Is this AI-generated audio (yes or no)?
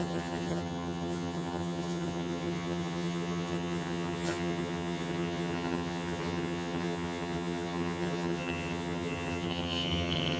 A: yes